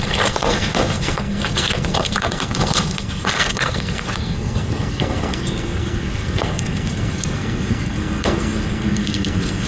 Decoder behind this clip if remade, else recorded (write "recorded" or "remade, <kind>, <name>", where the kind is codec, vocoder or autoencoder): remade, codec, SNAC